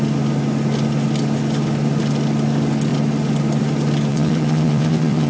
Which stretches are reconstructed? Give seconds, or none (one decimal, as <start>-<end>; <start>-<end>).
4.1-5.3